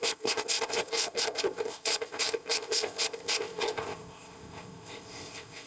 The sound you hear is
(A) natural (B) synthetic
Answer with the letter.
B